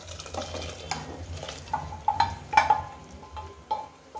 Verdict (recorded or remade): recorded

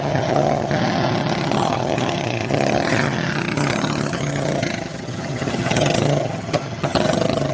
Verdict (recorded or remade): remade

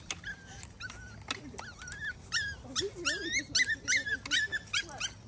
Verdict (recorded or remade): recorded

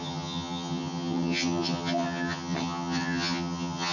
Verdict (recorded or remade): remade